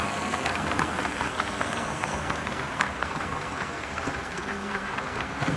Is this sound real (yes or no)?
no